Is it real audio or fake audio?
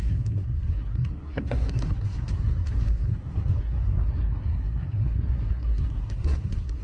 fake